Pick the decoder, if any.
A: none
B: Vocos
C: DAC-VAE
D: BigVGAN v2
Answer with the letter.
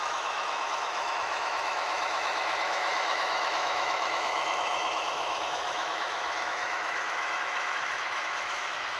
C